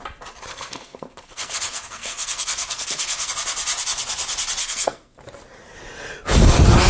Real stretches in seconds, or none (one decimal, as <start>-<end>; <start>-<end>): 0.0-0.5; 3.3-4.6; 5.2-6.9